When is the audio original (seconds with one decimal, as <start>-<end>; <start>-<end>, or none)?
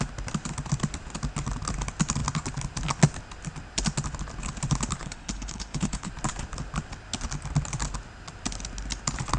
0.0-5.0; 6.1-9.4